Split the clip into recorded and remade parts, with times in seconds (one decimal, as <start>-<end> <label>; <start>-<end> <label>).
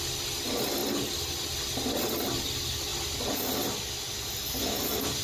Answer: 0.0-5.2 recorded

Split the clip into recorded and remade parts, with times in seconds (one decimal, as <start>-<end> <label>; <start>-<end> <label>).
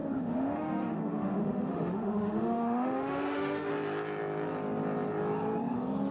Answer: 0.0-3.7 remade; 3.7-6.1 recorded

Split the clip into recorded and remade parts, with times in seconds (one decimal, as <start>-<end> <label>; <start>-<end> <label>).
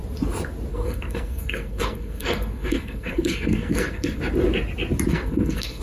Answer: 0.0-0.7 recorded; 0.7-4.2 remade; 4.2-5.1 recorded; 5.1-5.8 remade